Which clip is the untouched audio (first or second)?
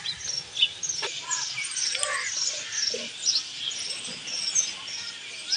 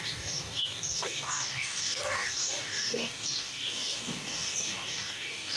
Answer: first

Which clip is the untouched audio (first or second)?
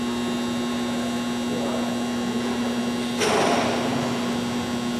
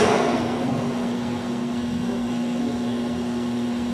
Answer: first